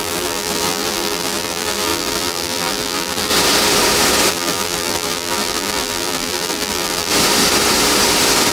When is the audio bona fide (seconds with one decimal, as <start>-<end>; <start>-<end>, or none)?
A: 3.3-4.3; 7.1-8.5